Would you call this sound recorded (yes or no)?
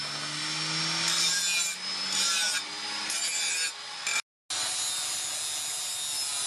yes